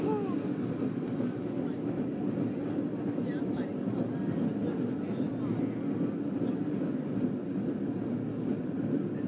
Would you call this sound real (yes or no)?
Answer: yes